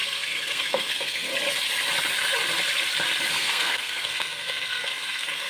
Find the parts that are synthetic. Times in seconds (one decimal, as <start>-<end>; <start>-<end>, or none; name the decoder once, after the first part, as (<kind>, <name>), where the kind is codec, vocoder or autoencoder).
0.0-1.3 (codec, SNAC); 3.3-5.5